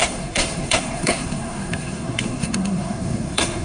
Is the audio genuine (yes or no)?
no